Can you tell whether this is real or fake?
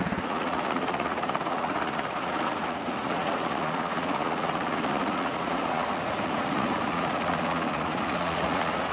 fake